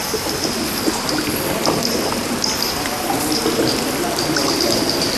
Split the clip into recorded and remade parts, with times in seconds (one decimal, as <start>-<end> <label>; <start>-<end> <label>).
0.0-5.2 recorded